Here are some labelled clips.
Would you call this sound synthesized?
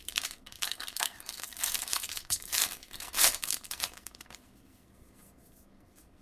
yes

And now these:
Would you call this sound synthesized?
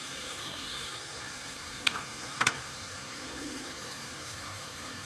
yes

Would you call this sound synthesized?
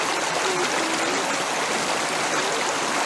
no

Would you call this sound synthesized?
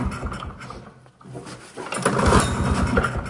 no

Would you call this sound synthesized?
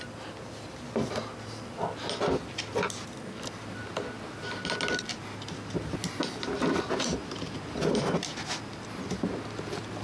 no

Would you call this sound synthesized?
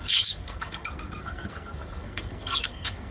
yes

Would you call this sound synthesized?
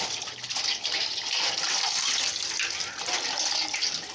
no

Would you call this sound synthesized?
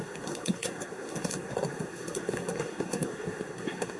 yes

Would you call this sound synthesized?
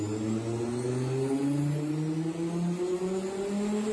no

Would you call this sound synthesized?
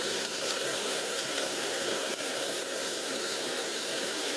yes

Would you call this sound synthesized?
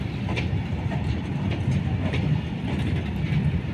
no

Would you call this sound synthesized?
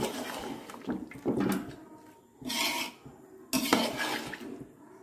no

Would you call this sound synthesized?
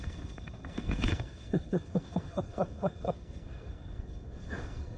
yes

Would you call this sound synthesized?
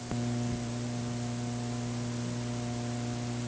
no